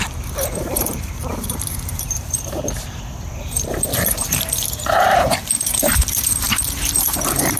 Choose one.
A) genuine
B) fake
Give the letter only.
B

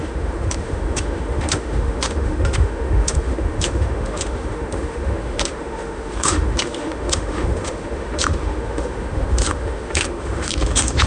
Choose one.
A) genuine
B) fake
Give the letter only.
B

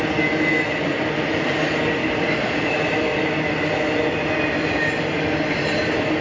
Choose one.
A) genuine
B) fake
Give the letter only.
A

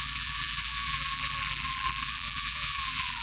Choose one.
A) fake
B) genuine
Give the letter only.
A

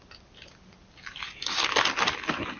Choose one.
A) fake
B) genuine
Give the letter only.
B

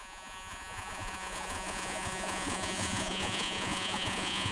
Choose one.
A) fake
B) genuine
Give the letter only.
A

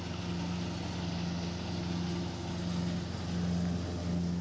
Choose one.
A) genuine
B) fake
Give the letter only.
A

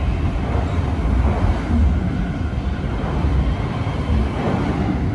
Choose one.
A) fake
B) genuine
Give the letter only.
B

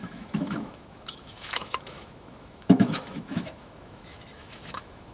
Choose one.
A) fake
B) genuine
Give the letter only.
A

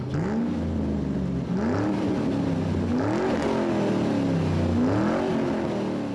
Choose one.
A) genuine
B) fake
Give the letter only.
A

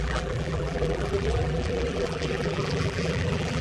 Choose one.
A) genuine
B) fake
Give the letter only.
B